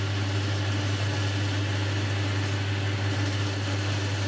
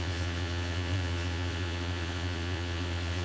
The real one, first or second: first